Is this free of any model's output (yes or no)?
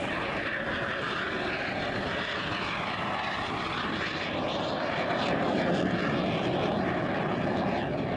yes